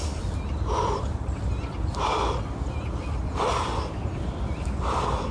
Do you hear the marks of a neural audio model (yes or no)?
no